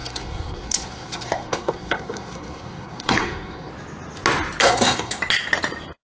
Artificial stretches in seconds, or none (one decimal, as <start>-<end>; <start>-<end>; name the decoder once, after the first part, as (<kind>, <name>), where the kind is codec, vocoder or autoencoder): 0.0-3.7 (codec, SNAC); 4.6-5.2